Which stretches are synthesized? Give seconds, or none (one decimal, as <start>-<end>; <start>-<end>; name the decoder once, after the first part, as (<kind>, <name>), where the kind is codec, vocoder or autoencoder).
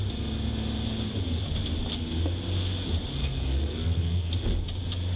3.2-4.3 (codec, SNAC)